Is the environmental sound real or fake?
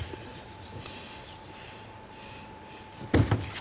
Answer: real